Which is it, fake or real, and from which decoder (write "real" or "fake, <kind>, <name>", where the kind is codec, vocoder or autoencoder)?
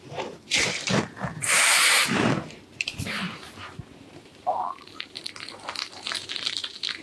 fake, vocoder, BigVGAN v2